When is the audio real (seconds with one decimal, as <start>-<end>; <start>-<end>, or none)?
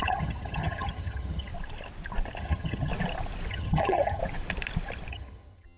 1.5-2.4; 2.9-3.5; 4.2-5.1